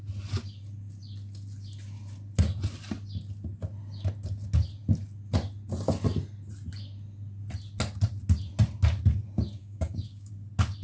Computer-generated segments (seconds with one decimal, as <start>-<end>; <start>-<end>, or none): 9.6-10.3